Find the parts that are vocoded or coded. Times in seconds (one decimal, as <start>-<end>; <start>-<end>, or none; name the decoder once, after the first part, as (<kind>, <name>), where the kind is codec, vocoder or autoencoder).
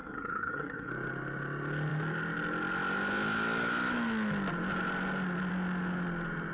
0.0-0.9 (codec, SNAC)